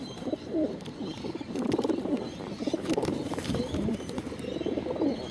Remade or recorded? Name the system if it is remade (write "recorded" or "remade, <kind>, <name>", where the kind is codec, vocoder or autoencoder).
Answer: remade, vocoder, BigVGAN v2